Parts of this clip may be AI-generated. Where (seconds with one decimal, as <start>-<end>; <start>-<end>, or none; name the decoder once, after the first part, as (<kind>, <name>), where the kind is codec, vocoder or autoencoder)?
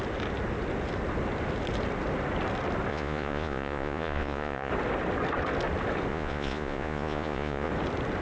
2.9-4.7 (vocoder, Vocos); 6.1-7.7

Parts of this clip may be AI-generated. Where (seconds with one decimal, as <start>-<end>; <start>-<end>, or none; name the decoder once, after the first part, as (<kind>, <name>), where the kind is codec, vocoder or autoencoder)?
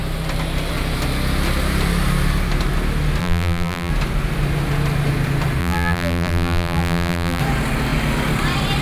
3.2-3.9 (vocoder, BigVGAN v2); 5.6-7.4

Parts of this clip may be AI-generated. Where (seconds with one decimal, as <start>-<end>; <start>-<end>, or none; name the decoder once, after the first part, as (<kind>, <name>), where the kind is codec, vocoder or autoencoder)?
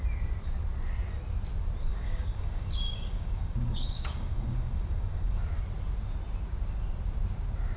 1.9-5.4 (codec, DAC)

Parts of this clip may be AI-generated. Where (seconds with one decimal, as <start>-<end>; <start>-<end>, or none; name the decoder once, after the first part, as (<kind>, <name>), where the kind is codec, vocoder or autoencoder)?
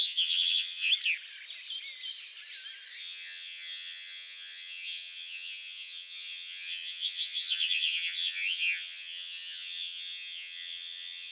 0.0-0.9 (vocoder, HiFi-GAN); 3.0-11.3